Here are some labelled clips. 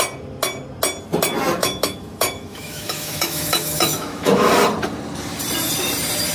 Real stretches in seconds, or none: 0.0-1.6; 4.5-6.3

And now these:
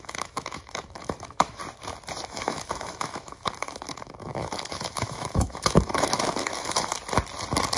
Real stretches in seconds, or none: 1.6-2.3; 6.9-7.8

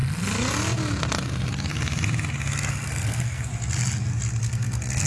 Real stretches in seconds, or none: 0.0-2.7; 3.5-4.4

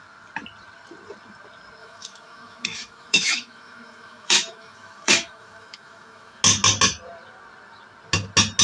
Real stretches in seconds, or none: 0.0-1.8; 6.4-8.6